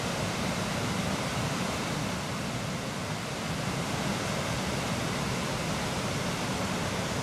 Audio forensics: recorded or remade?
recorded